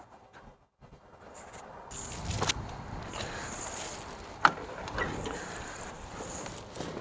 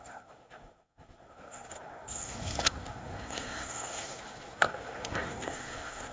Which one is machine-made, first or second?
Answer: second